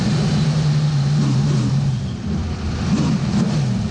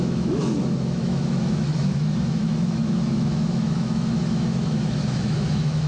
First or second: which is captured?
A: first